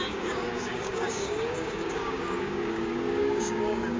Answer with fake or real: fake